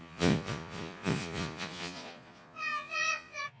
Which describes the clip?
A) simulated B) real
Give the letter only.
A